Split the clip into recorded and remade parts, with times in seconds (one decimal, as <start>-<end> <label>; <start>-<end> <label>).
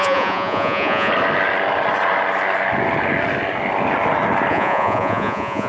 0.0-1.1 remade; 1.1-4.5 recorded; 4.5-5.7 remade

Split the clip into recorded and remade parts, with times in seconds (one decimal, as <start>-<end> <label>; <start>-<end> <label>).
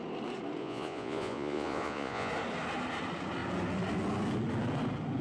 0.0-0.6 recorded; 0.6-2.3 remade; 2.3-5.2 recorded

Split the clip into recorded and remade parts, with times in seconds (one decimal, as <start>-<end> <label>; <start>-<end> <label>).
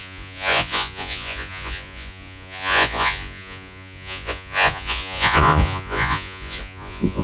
0.0-7.2 remade